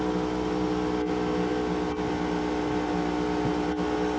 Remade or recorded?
recorded